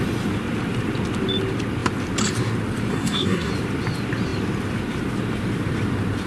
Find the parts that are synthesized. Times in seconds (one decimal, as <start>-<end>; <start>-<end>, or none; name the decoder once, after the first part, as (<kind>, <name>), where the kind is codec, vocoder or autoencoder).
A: 2.9-3.5 (codec, SNAC)